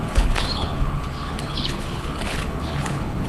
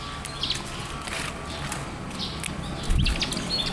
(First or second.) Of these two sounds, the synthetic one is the first